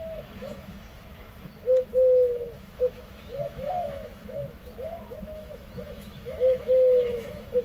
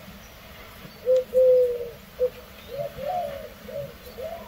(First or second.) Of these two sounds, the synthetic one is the first